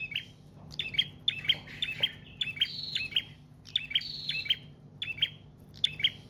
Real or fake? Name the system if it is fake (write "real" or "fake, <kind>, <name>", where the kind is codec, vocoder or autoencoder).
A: real